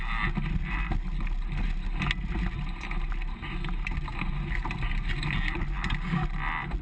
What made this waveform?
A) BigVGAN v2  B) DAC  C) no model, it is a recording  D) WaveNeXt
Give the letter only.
C